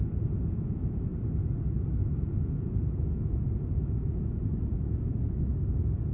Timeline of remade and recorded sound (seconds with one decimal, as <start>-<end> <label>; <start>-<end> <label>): 0.0-1.1 remade; 1.1-2.2 recorded; 2.2-6.1 remade